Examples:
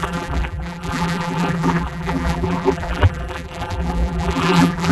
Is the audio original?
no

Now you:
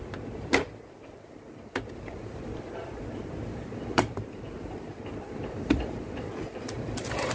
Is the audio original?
no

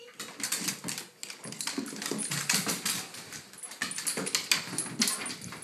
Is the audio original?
yes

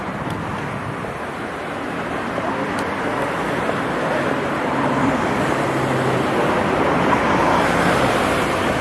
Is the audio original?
yes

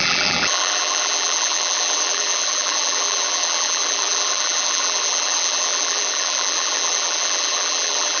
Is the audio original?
no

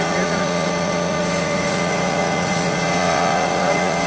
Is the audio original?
no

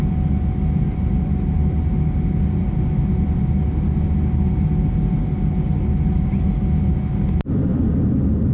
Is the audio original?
yes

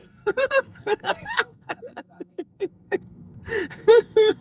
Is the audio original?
no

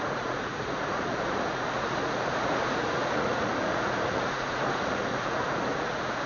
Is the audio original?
no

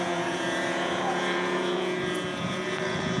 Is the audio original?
no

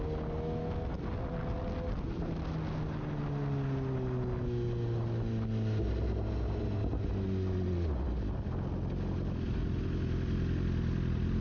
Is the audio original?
yes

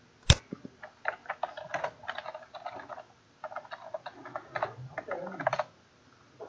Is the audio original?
yes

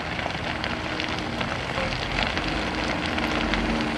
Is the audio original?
yes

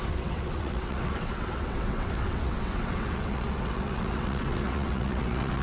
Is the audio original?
no